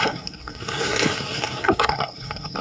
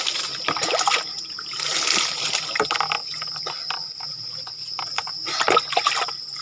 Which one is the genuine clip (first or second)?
second